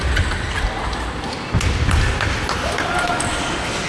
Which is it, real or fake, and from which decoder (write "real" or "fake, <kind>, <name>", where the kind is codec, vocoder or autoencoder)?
real